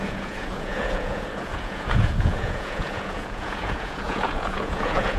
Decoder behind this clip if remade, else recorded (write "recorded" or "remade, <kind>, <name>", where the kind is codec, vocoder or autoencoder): remade, vocoder, Vocos